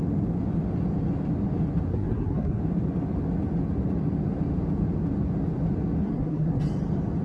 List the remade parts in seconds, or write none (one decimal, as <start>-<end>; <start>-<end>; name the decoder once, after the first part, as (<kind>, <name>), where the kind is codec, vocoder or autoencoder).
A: 1.9-2.6 (codec, SNAC); 6.0-6.6